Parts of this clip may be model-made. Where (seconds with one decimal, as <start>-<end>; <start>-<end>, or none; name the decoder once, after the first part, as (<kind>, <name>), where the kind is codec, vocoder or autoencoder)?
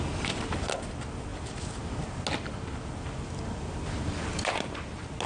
none